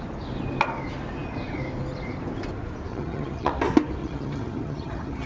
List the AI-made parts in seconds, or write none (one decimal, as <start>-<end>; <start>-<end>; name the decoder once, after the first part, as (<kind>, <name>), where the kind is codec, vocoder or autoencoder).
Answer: 2.9-3.5 (vocoder, HiFi-GAN); 4.0-5.3